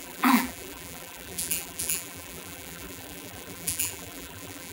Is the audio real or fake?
fake